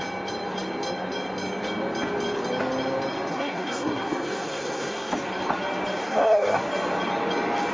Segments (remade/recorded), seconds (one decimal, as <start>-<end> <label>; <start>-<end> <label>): 0.0-3.3 recorded; 3.3-5.1 remade; 5.1-6.0 recorded; 6.0-6.6 remade; 6.6-7.7 recorded